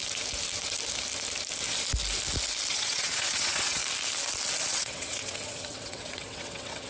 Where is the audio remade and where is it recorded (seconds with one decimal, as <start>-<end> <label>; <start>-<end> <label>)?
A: 0.0-2.7 recorded; 2.7-3.8 remade; 3.8-4.7 recorded; 4.7-6.9 remade